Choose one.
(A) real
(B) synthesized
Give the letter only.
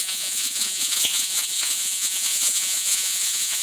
B